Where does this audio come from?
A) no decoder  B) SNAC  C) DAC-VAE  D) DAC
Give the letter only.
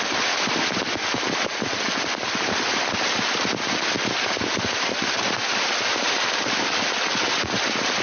A